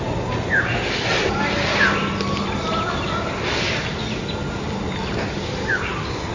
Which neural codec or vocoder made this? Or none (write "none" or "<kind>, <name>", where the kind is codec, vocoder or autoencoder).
none